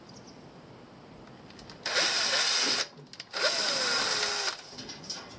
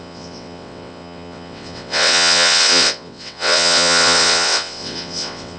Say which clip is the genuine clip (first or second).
first